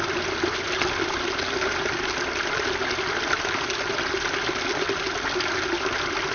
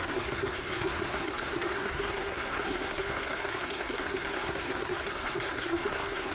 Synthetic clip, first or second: second